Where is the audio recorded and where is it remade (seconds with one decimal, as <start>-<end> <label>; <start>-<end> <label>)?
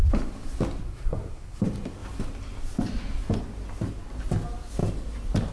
0.0-0.8 recorded; 0.8-1.6 remade; 1.6-5.5 recorded